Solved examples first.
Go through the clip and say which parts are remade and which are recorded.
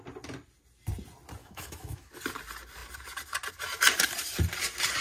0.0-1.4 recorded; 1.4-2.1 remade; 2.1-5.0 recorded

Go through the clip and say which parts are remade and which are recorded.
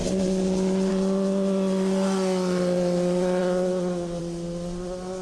0.0-5.2 recorded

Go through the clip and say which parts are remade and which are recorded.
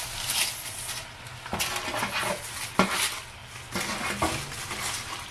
0.0-5.3 recorded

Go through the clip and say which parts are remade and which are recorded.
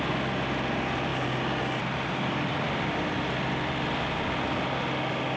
0.0-5.4 recorded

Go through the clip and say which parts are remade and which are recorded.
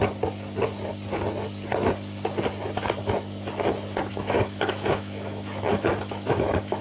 0.0-4.1 recorded; 4.1-6.8 remade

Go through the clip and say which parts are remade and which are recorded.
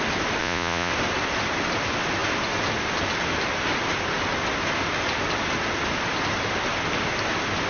0.0-0.4 recorded; 0.4-0.9 remade; 0.9-7.7 recorded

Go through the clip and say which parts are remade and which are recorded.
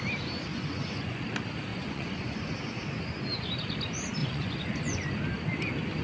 0.0-0.5 recorded; 0.5-1.2 remade; 1.2-1.7 recorded; 1.7-2.5 remade; 2.5-4.2 recorded; 4.2-5.1 remade; 5.1-6.0 recorded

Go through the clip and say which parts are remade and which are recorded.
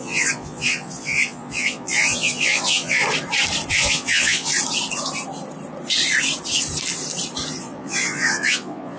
0.0-3.0 remade; 3.0-3.7 recorded; 3.7-4.5 remade; 4.5-7.6 recorded; 7.6-9.0 remade